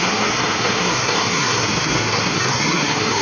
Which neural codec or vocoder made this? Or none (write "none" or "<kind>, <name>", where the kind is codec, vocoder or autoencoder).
codec, SNAC